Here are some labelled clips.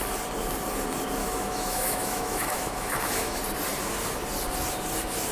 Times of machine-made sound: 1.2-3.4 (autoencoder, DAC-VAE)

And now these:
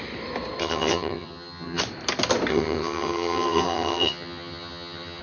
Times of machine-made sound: 0.6-1.8 (vocoder, HiFi-GAN); 2.5-5.2

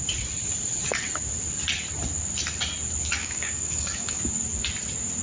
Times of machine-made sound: 3.2-4.2 (codec, DAC)

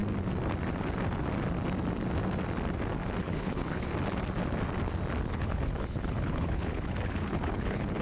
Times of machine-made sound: 3.2-3.9 (codec, HILCodec); 5.3-8.0

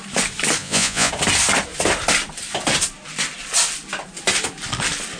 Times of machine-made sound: 0.6-1.1 (vocoder, Vocos)

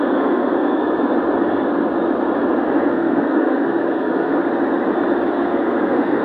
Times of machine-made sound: 0.0-0.8 (codec, SNAC); 2.9-4.4; 5.3-6.2

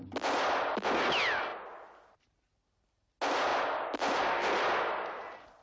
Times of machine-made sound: none